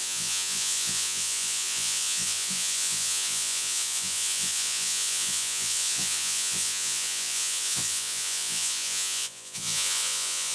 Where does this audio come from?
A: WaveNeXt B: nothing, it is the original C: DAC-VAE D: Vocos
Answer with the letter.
D